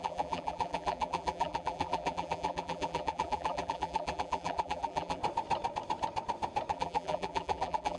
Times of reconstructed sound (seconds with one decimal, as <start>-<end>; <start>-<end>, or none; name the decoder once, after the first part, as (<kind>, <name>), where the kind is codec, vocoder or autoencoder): 0.0-5.2 (vocoder, BigVGAN v2); 6.7-8.0